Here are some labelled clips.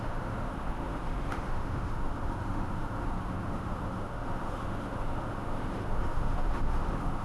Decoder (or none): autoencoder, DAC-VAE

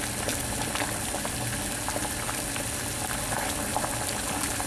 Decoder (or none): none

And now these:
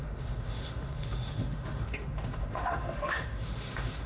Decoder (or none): autoencoder, DAC-VAE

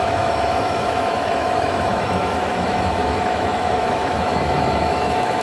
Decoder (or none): autoencoder, DAC-VAE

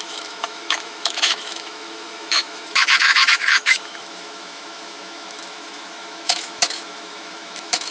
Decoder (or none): autoencoder, DAC-VAE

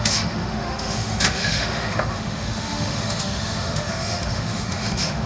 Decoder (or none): autoencoder, DAC-VAE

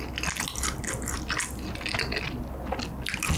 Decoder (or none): none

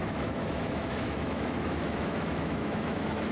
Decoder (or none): autoencoder, DAC-VAE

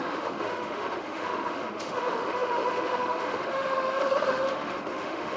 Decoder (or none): autoencoder, DAC-VAE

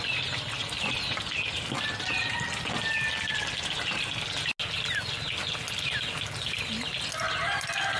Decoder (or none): none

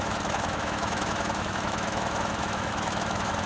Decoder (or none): autoencoder, DAC-VAE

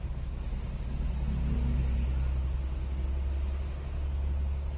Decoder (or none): none